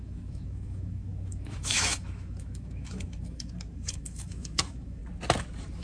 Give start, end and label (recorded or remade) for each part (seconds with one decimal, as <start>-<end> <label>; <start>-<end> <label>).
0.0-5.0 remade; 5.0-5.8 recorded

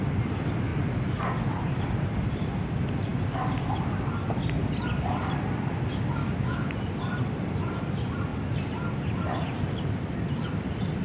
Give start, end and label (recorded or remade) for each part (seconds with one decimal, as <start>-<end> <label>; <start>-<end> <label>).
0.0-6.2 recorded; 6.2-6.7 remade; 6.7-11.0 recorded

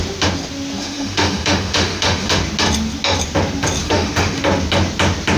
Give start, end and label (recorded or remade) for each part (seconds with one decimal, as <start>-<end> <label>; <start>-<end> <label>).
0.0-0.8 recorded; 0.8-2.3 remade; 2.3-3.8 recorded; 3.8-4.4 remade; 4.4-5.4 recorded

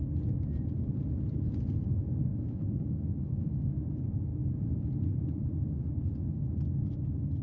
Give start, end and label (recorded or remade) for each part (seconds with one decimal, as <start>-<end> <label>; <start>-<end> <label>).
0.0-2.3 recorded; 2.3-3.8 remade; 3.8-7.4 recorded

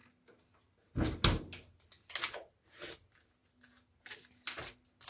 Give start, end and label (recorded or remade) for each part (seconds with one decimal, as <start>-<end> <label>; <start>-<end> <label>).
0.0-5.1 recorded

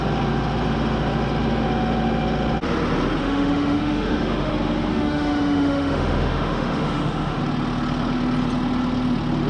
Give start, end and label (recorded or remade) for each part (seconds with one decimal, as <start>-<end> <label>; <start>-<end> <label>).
0.0-3.2 recorded; 3.2-4.5 remade; 4.5-4.9 recorded; 4.9-7.4 remade; 7.4-9.5 recorded